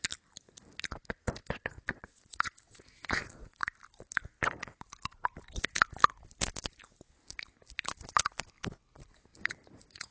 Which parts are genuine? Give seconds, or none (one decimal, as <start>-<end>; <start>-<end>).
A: 0.0-1.4; 3.6-9.3